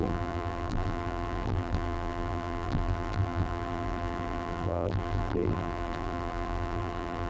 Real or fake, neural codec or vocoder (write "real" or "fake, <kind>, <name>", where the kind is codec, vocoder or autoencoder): fake, vocoder, BigVGAN v2